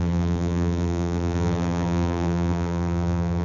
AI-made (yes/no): yes